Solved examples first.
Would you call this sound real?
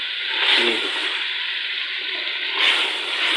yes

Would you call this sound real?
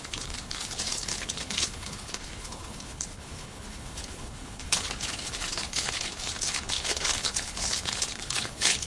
no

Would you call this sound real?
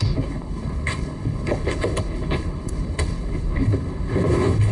no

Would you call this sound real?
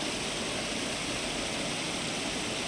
yes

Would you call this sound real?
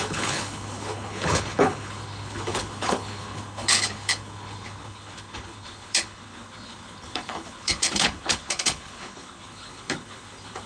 no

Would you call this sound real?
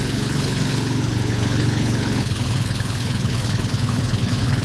no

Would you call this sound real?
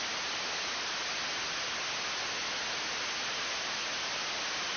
yes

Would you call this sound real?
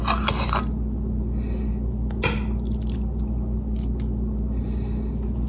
yes